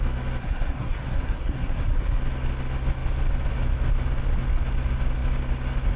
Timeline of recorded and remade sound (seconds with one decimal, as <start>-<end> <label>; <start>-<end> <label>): 0.0-0.4 recorded; 0.4-2.2 remade; 2.2-6.0 recorded